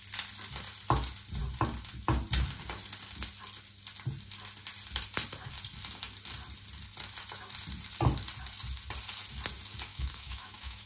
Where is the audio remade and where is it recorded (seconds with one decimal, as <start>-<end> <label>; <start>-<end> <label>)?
0.0-9.9 recorded; 9.9-10.9 remade